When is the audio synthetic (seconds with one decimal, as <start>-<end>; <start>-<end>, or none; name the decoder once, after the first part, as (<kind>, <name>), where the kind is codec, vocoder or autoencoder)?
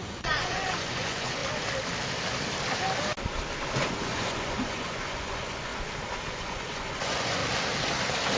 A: 0.0-1.4 (vocoder, Vocos); 3.9-5.7; 6.3-7.4